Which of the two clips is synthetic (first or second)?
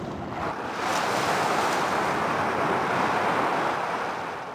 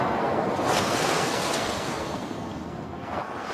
second